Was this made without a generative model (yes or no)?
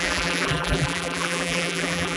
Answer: no